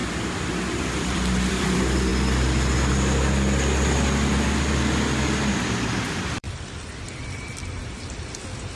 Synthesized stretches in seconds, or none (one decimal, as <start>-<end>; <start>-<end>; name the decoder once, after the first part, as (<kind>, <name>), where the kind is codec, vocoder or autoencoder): 0.8-2.1 (vocoder, BigVGAN v2); 6.3-8.8